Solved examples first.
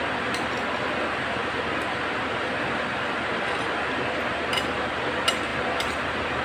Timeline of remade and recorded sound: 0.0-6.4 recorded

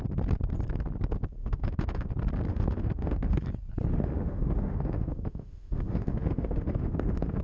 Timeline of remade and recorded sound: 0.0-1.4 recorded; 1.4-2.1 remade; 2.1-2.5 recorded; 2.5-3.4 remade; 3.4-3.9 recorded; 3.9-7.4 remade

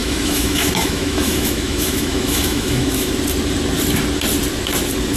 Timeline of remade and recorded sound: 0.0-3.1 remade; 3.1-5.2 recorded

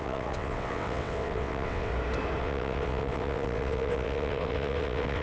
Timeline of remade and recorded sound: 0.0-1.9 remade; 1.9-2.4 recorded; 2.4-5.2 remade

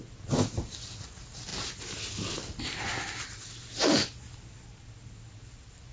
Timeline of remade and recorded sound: 0.0-5.9 recorded

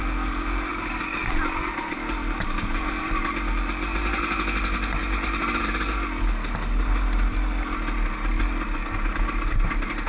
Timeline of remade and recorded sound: 0.0-10.1 recorded